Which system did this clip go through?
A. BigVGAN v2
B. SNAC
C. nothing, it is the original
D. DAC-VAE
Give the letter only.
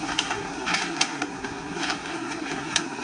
B